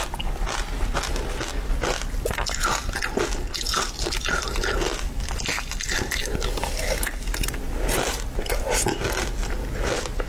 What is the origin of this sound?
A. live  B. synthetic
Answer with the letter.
A